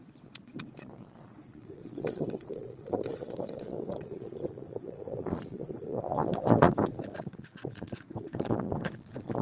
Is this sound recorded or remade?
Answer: remade